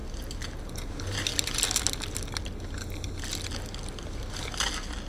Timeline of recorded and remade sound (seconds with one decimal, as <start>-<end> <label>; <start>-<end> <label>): 0.0-5.1 recorded

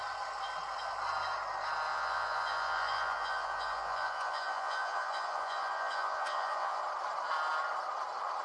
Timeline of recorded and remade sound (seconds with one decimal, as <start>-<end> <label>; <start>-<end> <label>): 0.0-1.9 recorded; 1.9-6.8 remade; 6.8-8.4 recorded

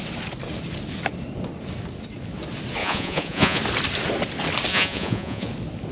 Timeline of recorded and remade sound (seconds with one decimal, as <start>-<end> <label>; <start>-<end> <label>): 0.0-2.8 recorded; 2.8-3.6 remade; 3.6-4.7 recorded; 4.7-5.5 remade; 5.5-5.9 recorded